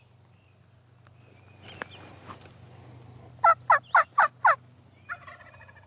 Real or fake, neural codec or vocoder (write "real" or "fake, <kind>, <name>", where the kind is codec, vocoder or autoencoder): real